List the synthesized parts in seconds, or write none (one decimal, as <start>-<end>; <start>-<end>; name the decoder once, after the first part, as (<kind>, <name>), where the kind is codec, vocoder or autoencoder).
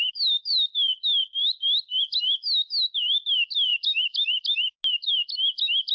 none